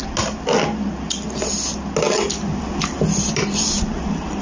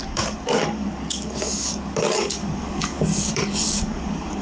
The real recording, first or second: first